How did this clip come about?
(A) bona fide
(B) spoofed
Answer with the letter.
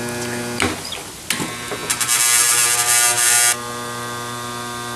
A